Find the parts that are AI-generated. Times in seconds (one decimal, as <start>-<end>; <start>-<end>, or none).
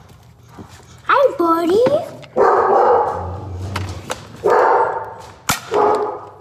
0.6-1.4